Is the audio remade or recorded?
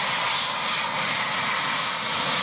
recorded